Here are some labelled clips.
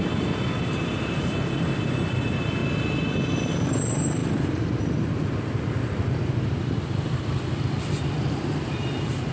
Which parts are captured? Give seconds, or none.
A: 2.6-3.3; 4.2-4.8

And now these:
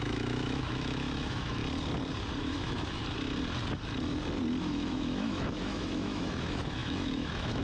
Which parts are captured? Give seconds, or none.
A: 1.6-2.4; 3.0-4.6

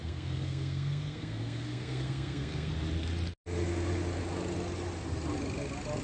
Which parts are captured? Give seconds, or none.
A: 2.7-6.0